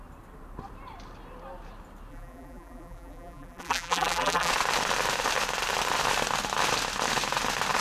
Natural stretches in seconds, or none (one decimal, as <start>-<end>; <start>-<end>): 0.0-2.1; 4.5-7.8